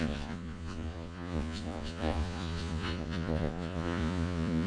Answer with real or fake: fake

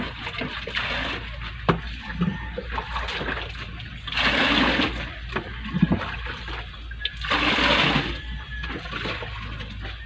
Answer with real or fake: real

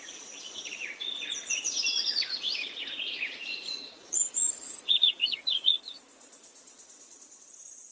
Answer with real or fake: fake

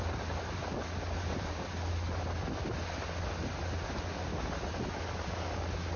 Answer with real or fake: real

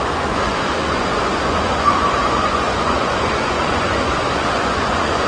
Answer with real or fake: fake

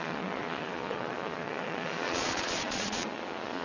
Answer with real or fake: fake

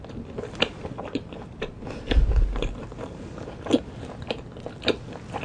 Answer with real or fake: real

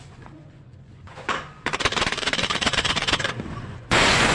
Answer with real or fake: fake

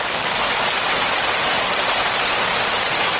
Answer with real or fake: real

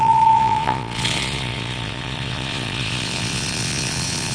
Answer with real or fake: fake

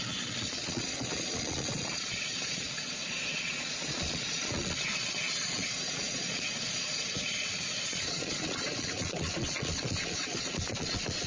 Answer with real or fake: fake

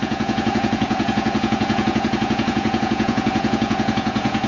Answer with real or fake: fake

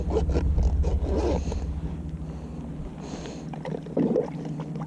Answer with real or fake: real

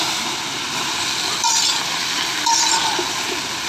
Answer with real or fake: real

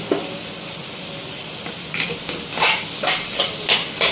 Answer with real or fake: real